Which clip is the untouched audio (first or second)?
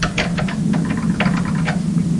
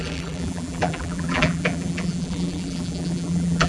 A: first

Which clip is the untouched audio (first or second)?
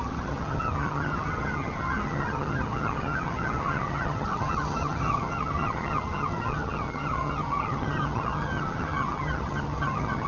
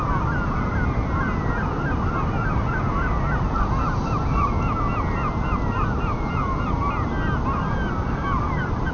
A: second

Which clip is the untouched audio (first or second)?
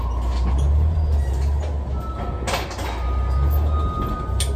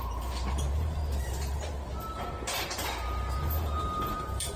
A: first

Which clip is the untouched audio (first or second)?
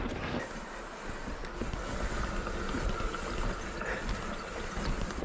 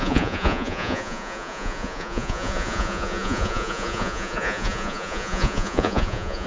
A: first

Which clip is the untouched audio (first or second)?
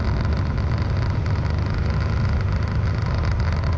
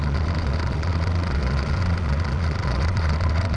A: first